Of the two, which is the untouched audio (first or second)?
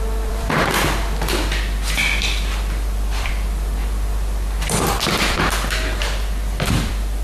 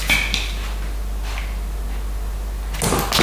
second